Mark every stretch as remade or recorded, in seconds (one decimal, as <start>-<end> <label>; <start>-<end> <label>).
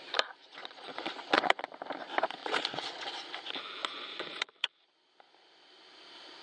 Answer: 0.0-0.4 recorded; 0.4-1.6 remade; 1.6-2.4 recorded; 2.4-3.1 remade; 3.1-3.8 recorded; 3.8-4.9 remade; 4.9-6.4 recorded